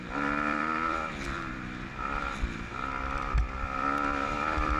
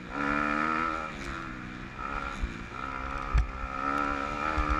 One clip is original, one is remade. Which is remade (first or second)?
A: first